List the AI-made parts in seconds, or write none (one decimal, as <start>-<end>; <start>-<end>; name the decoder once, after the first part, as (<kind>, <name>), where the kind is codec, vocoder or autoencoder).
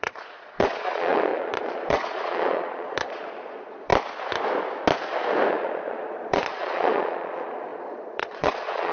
0.0-3.9 (vocoder, Vocos); 5.5-8.9